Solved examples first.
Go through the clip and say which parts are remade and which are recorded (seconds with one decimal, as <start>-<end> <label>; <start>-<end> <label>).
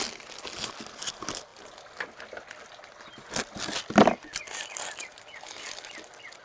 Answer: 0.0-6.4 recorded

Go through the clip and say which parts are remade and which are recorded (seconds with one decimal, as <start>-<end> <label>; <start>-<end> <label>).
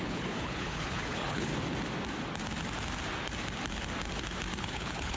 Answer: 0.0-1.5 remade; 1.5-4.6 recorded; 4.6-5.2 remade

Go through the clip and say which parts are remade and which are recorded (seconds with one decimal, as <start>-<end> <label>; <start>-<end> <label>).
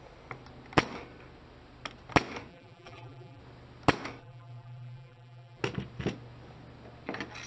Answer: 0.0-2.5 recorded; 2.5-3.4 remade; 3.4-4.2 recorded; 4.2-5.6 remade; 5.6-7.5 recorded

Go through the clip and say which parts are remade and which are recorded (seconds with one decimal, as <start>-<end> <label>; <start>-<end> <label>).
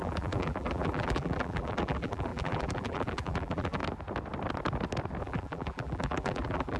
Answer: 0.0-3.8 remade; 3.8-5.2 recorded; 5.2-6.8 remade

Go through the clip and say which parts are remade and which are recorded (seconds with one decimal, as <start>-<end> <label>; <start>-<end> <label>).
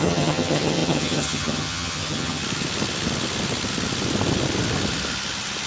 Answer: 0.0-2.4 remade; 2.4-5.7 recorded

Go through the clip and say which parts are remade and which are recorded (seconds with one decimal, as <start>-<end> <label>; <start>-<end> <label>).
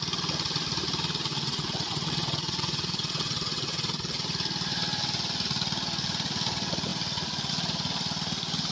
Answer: 0.0-1.3 recorded; 1.3-4.2 remade; 4.2-8.7 recorded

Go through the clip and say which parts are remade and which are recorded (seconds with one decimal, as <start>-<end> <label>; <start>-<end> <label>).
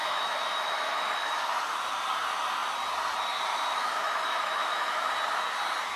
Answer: 0.0-1.5 remade; 1.5-3.5 recorded; 3.5-5.1 remade; 5.1-6.0 recorded